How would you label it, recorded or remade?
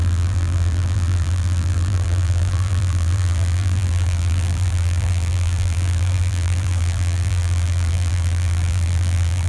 remade